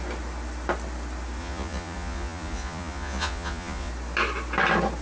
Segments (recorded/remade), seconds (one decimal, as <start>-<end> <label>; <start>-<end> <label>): 0.0-1.4 recorded; 1.4-3.9 remade; 3.9-5.0 recorded